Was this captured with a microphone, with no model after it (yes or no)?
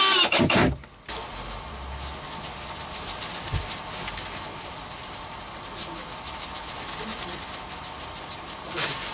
yes